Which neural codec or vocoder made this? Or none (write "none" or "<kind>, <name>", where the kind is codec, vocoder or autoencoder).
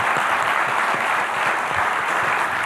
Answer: none